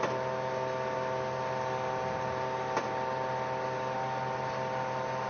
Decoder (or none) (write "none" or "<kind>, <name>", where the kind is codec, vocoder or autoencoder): none